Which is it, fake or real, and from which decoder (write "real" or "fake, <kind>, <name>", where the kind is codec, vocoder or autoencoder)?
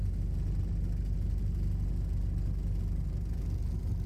real